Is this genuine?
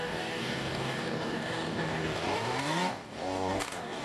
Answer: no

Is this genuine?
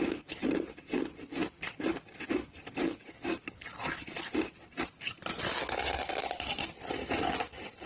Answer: yes